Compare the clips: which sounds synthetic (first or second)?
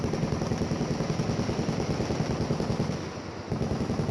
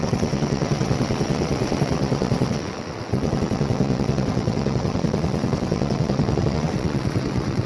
second